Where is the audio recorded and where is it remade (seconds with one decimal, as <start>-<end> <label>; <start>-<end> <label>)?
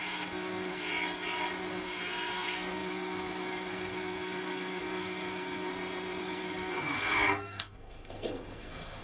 0.0-0.9 remade; 0.9-1.7 recorded; 1.7-5.7 remade; 5.7-6.2 recorded; 6.2-9.0 remade